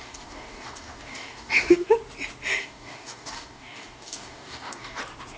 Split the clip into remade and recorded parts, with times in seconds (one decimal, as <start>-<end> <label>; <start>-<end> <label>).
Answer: 0.0-1.9 remade; 1.9-2.6 recorded; 2.6-5.0 remade; 5.0-5.4 recorded